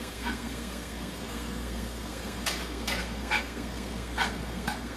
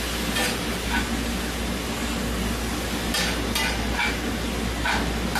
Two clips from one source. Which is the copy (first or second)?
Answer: first